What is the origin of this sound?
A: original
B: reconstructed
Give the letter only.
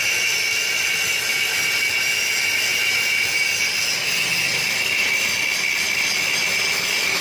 A